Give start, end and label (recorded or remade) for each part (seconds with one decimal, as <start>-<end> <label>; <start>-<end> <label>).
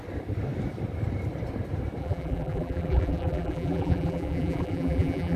0.0-2.0 recorded; 2.0-5.4 remade